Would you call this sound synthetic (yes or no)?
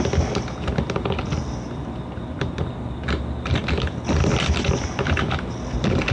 no